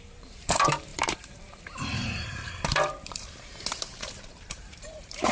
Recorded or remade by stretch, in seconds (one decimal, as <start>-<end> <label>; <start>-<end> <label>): 0.0-5.3 remade